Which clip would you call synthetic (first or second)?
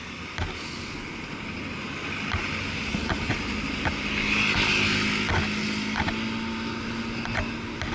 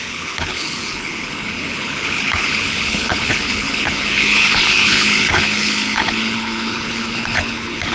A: second